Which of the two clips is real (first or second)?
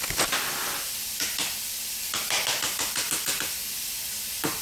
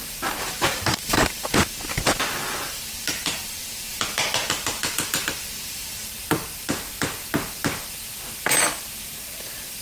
first